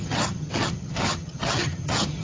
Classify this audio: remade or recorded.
remade